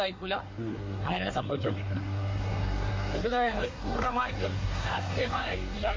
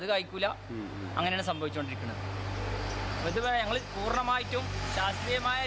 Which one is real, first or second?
second